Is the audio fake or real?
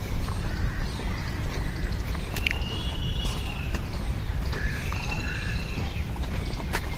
fake